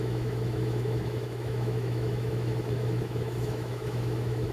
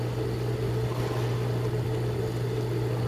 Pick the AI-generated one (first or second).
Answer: first